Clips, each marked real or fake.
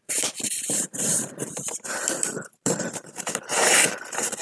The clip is fake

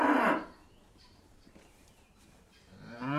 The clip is fake